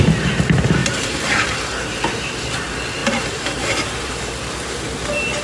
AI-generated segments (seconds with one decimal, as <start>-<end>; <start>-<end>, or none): 0.8-2.0; 3.0-4.1